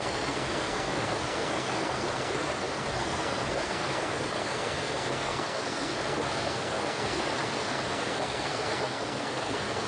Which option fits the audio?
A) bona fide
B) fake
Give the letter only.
B